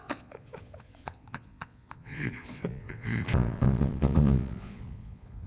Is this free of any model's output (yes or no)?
no